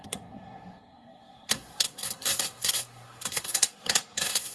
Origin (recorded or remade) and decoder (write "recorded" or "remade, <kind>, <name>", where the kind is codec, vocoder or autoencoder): remade, codec, SNAC